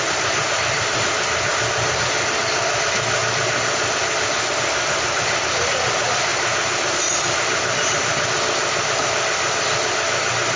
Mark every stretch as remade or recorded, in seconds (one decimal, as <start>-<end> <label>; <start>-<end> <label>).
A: 0.0-10.6 recorded